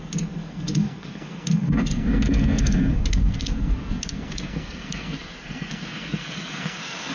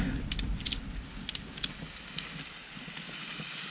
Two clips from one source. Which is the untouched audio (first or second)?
second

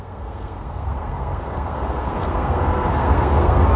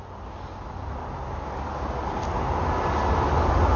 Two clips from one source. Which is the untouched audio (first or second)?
second